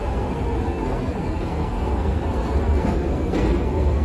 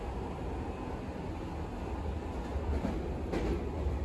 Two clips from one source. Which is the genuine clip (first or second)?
second